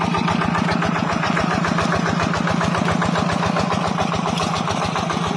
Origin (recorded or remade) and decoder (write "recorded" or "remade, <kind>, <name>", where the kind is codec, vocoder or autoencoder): recorded